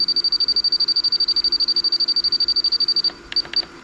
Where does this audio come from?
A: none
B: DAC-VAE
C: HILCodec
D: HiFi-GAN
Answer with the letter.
A